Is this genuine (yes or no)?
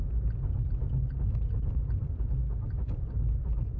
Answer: yes